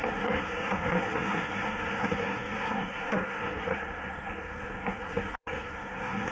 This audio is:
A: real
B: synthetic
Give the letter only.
B